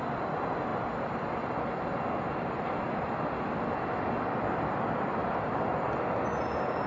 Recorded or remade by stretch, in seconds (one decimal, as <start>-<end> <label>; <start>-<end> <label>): 0.0-6.9 recorded